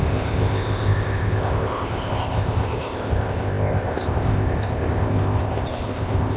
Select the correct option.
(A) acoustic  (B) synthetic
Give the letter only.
B